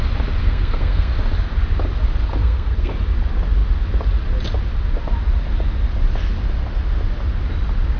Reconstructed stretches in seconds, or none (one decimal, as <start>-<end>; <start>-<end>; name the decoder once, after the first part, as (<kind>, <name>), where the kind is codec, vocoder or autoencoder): 0.4-1.1 (codec, SNAC); 2.4-2.9